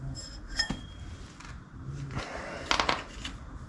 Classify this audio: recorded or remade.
recorded